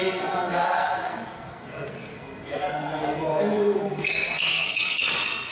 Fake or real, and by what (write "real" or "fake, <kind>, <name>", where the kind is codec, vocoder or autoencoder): fake, codec, SNAC